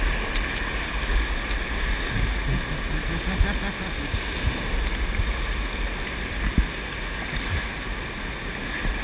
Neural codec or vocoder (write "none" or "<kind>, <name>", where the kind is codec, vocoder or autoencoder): none